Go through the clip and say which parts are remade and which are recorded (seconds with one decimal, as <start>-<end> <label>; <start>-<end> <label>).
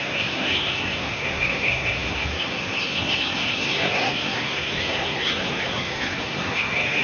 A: 0.0-7.0 remade